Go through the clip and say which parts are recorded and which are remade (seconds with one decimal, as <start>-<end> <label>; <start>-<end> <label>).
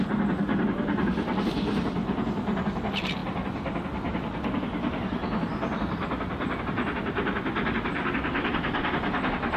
0.0-9.6 recorded